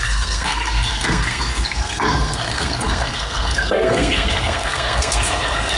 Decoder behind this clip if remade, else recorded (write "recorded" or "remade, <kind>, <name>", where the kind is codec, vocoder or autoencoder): remade, codec, SNAC